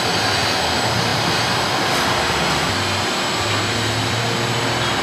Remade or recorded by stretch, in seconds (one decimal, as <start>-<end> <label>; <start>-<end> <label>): 0.0-5.0 recorded